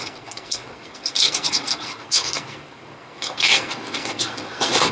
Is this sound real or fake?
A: fake